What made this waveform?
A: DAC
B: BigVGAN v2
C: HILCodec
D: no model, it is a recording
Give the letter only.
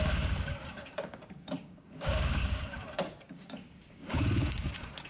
A